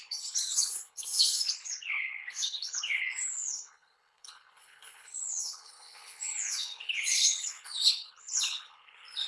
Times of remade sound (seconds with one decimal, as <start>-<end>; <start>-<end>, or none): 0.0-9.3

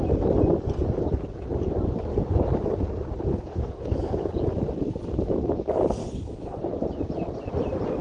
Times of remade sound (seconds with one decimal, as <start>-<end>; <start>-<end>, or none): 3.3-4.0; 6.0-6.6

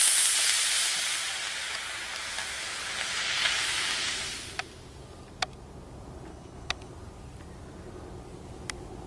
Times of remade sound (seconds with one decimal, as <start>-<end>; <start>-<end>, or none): 6.3-6.9

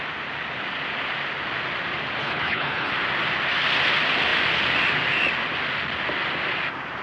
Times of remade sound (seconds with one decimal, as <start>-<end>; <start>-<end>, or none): 2.2-2.9